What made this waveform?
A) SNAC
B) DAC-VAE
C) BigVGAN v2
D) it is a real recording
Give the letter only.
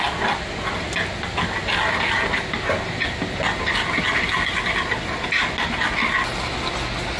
D